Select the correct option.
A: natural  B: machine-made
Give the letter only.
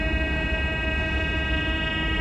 A